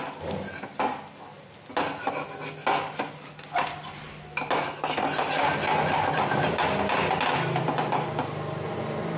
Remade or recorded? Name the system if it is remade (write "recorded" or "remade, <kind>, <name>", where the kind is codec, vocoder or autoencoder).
recorded